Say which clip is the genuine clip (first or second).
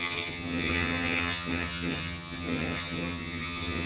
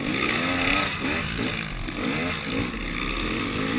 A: second